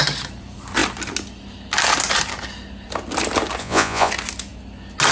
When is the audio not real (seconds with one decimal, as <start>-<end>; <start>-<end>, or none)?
3.6-4.1